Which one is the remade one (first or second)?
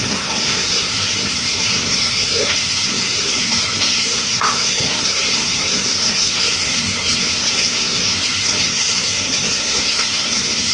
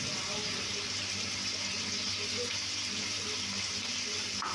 first